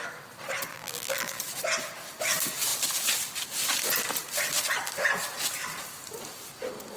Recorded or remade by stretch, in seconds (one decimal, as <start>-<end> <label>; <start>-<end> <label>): 0.0-0.7 recorded; 0.7-1.4 remade; 1.4-7.0 recorded